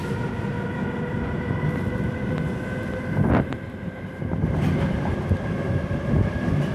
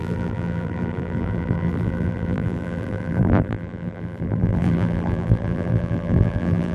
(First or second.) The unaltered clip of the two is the first